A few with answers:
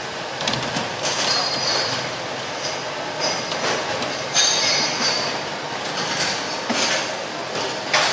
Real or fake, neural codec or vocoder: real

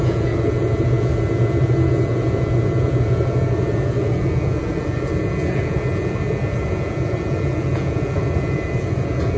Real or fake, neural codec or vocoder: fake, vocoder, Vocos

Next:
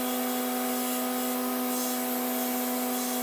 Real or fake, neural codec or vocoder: real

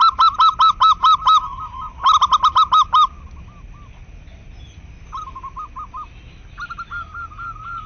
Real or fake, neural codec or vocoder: real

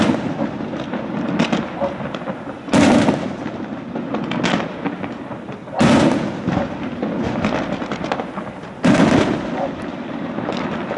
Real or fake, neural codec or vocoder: real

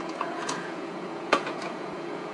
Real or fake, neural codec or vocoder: fake, vocoder, Vocos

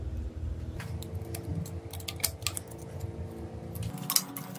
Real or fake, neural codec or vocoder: real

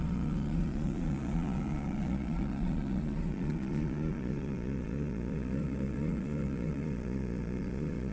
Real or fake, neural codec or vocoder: fake, vocoder, Vocos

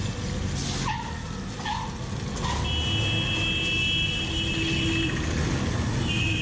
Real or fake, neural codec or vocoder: real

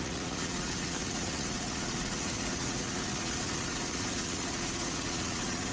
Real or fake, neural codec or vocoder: fake, vocoder, Vocos